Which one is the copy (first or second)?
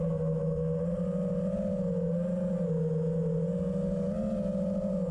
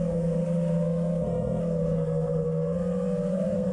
second